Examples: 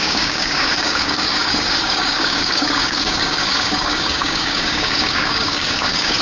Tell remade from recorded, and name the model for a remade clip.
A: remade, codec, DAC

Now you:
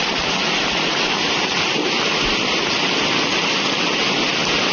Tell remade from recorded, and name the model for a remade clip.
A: recorded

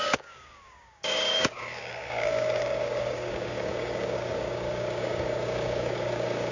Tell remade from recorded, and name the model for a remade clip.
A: remade, codec, DAC